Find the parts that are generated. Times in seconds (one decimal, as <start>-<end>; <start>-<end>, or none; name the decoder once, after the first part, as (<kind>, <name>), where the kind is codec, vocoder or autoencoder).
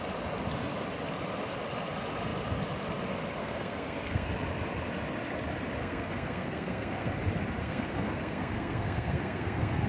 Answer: 3.4-4.3 (codec, SNAC); 5.8-7.1; 7.6-9.9